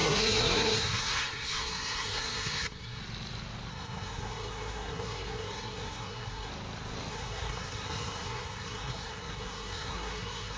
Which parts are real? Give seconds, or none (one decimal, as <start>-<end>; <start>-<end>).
3.0-3.7; 6.5-7.1